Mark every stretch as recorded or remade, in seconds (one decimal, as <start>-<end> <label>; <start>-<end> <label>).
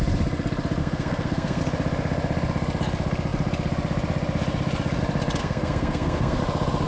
0.0-0.8 recorded; 0.8-1.6 remade; 1.6-5.4 recorded; 5.4-6.4 remade; 6.4-6.9 recorded